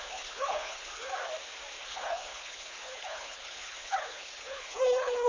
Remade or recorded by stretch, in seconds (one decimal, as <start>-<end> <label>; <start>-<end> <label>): 0.0-1.1 remade; 1.1-1.8 recorded; 1.8-5.3 remade